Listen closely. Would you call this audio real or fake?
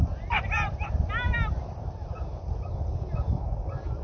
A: real